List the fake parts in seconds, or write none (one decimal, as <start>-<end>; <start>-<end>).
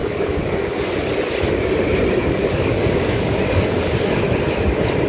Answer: 0.0-0.8; 2.2-4.2